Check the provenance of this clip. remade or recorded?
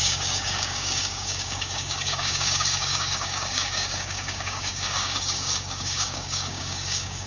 remade